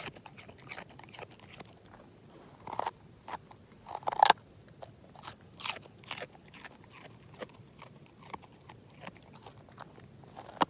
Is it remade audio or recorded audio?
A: recorded